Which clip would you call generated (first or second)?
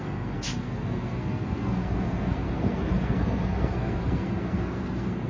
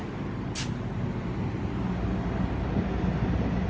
first